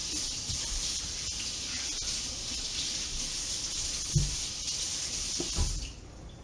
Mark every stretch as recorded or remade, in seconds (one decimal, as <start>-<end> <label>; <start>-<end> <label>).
0.0-1.0 remade; 1.0-4.7 recorded; 4.7-6.4 remade